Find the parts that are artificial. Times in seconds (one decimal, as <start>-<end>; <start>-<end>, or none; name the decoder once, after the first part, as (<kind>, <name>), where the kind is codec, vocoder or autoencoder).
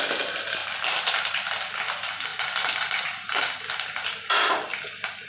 0.6-1.5 (vocoder, BigVGAN v2)